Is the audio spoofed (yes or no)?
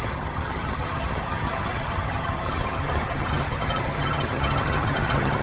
yes